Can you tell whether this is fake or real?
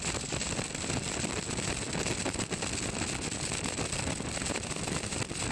fake